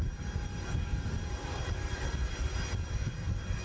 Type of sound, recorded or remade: recorded